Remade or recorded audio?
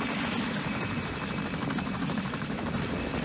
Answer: recorded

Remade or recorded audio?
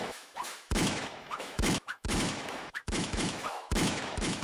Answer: remade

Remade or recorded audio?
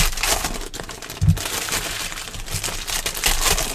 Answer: recorded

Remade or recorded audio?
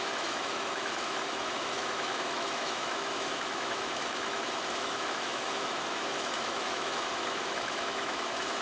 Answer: remade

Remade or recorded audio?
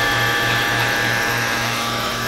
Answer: remade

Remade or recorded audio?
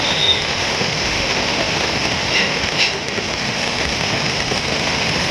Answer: remade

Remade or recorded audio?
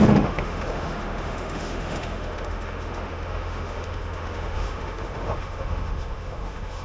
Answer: remade